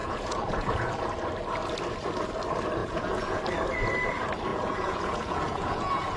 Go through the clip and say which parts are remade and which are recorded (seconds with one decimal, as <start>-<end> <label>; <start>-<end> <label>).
0.0-0.9 remade; 0.9-2.8 recorded; 2.8-3.4 remade; 3.4-4.5 recorded; 4.5-6.2 remade